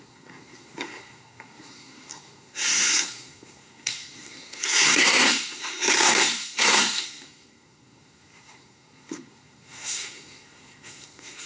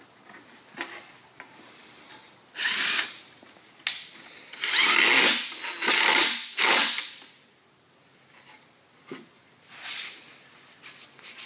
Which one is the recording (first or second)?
second